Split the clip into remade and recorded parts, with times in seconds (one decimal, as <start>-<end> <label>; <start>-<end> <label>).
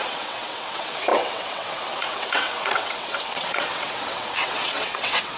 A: 0.0-5.4 remade